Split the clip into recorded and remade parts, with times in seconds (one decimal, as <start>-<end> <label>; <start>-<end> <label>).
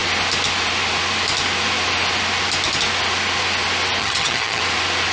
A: 0.0-4.0 recorded; 4.0-4.6 remade; 4.6-5.1 recorded